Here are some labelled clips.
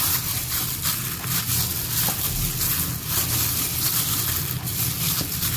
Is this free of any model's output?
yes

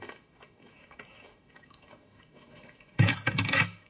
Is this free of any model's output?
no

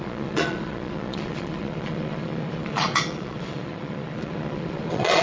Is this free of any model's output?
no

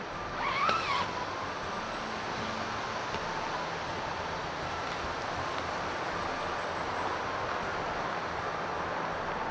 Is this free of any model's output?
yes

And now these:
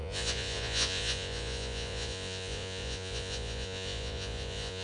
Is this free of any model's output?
no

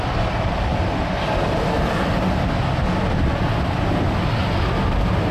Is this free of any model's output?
yes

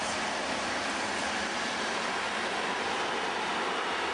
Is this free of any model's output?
yes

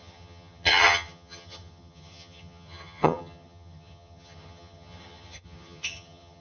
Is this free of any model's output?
no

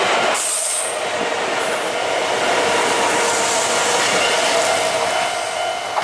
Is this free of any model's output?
yes